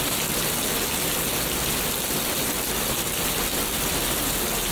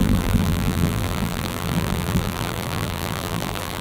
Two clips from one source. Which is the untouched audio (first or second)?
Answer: first